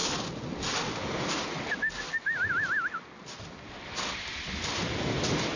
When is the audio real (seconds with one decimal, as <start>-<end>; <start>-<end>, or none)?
0.0-5.6